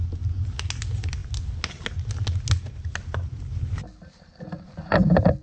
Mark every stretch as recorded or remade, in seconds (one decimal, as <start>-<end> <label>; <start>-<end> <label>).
0.0-5.4 recorded